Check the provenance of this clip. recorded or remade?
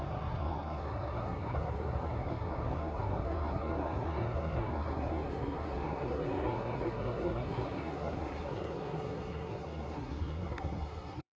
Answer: remade